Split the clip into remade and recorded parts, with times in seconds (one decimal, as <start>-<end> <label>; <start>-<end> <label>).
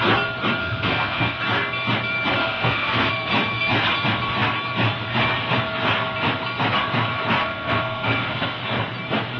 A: 0.0-0.6 recorded; 0.6-1.4 remade; 1.4-2.4 recorded; 2.4-3.1 remade; 3.1-7.4 recorded; 7.4-8.6 remade; 8.6-9.4 recorded